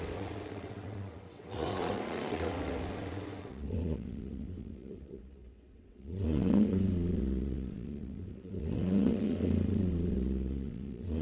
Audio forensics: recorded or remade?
remade